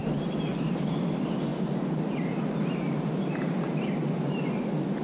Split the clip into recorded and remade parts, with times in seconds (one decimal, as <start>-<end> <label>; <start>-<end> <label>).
0.0-5.0 recorded